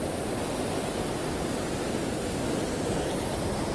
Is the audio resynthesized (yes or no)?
no